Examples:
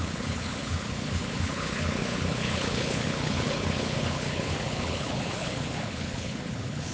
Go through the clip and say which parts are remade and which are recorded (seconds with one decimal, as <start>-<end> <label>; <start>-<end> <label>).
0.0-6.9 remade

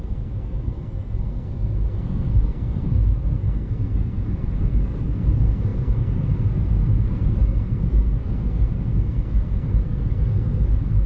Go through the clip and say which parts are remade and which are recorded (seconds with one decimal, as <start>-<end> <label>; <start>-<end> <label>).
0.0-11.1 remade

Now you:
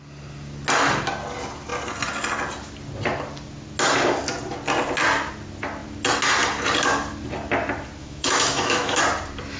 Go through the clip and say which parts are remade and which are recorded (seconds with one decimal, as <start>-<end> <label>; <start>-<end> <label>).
0.0-8.0 recorded; 8.0-9.0 remade; 9.0-9.6 recorded

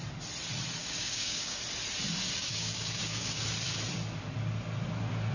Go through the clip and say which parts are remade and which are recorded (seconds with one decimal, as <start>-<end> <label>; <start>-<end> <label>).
0.0-0.8 recorded; 0.8-1.6 remade; 1.6-2.4 recorded; 2.4-3.4 remade; 3.4-5.3 recorded

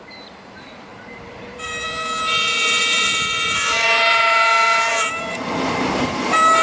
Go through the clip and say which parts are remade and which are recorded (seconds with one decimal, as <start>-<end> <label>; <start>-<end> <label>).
0.0-4.9 remade; 4.9-5.7 recorded; 5.7-6.6 remade